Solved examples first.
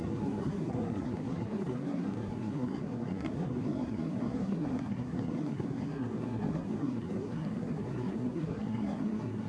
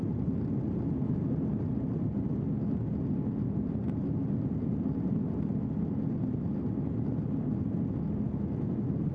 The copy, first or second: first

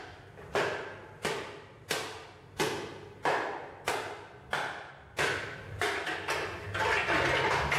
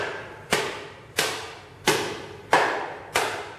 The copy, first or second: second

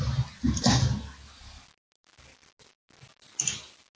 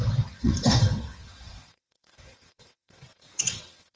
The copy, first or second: second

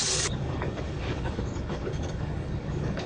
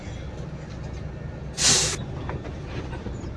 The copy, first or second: first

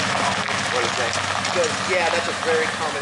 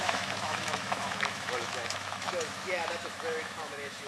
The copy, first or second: second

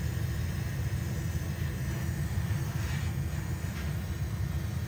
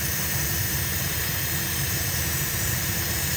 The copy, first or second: second